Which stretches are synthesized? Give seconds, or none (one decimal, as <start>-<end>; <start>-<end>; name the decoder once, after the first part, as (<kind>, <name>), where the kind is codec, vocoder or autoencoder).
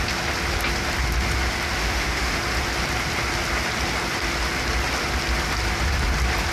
1.8-2.4 (autoencoder, DAC-VAE)